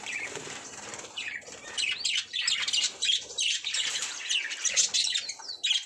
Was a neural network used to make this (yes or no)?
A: yes